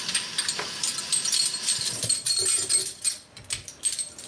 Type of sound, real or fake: real